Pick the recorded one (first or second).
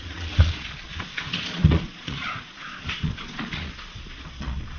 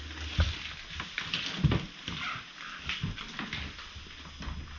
second